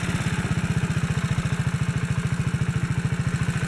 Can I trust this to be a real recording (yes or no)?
yes